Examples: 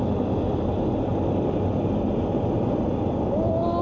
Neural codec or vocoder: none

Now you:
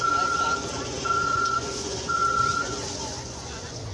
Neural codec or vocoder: vocoder, Vocos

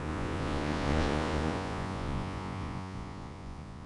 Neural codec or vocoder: vocoder, Vocos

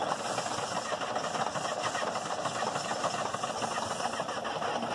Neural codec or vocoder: none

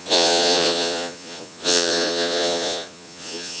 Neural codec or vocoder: vocoder, Vocos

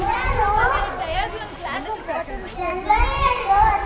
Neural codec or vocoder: none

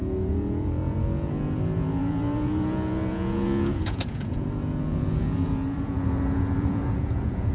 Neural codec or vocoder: vocoder, Vocos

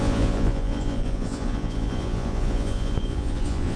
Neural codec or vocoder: vocoder, Vocos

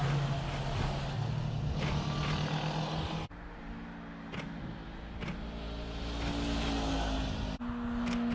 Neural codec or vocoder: none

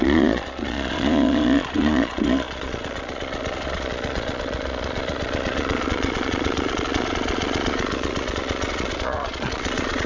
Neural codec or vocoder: vocoder, Vocos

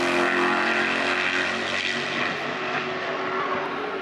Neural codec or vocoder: none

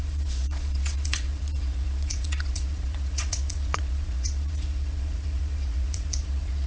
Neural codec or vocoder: vocoder, Vocos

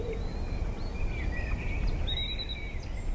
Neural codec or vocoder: none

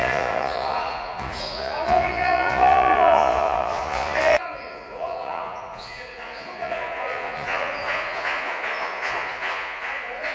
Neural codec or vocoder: vocoder, Vocos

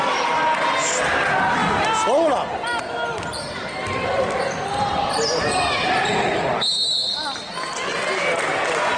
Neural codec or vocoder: none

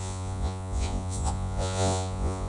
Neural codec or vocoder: vocoder, Vocos